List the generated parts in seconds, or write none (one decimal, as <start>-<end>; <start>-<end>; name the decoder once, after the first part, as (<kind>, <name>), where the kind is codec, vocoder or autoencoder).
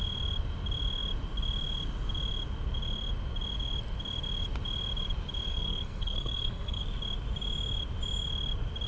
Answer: 5.5-6.8 (codec, SNAC)